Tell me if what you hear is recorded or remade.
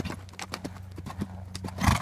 recorded